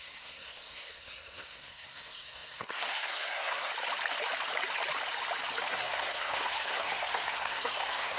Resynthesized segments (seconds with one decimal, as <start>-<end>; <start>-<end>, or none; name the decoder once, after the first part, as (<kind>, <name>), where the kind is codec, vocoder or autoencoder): 0.0-3.7 (codec, SNAC); 5.7-8.2